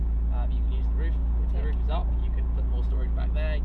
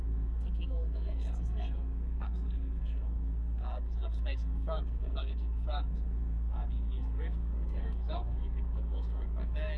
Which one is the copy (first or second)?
second